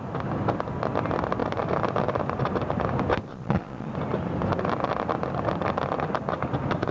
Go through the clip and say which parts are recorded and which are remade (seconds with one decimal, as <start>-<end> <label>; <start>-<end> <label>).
0.0-3.3 recorded; 3.3-3.9 remade; 3.9-6.9 recorded